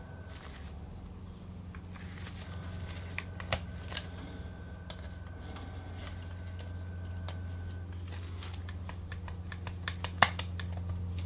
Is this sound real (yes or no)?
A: yes